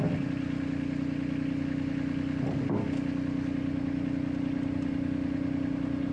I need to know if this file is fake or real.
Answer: real